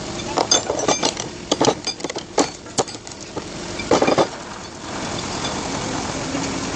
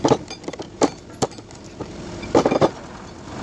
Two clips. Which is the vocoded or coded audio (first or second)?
first